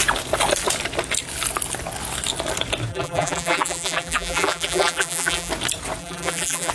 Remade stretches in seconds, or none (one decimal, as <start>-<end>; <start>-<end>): 2.9-5.5; 6.0-6.7